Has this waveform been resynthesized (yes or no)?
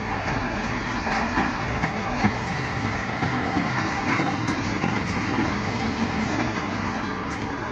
yes